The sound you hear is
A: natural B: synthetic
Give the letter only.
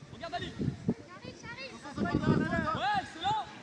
A